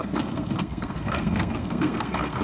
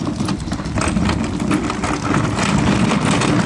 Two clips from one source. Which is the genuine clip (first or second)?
second